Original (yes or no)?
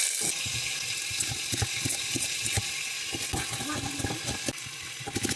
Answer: yes